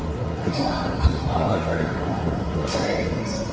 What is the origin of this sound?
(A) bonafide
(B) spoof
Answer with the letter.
B